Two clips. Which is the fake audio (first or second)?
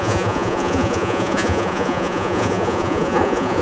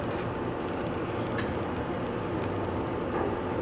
first